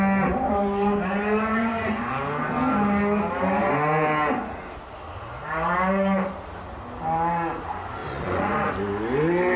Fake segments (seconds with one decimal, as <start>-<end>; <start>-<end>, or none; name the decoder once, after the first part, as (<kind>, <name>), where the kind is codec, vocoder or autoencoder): 1.5-2.1 (vocoder, Vocos); 8.0-8.7